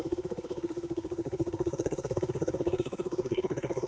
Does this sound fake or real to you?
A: fake